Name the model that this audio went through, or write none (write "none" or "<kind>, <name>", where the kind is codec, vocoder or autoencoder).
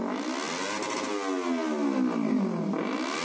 none